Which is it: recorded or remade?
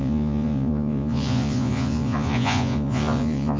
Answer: remade